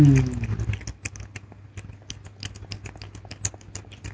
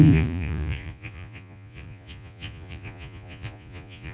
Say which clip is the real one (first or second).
first